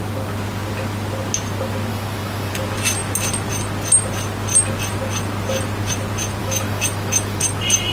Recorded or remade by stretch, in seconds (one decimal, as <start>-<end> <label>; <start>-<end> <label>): 0.0-1.9 recorded; 1.9-2.5 remade; 2.5-6.4 recorded; 6.4-7.4 remade; 7.4-7.9 recorded